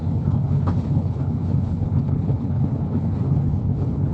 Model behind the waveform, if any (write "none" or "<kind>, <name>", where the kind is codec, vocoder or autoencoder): codec, HILCodec